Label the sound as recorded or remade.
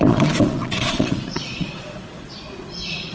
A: remade